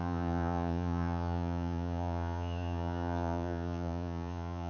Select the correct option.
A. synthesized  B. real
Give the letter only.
A